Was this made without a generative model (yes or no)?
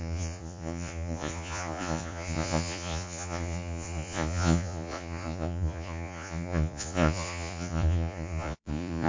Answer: no